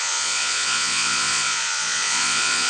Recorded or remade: remade